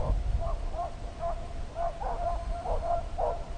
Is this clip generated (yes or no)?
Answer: no